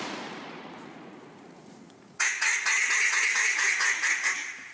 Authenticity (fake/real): fake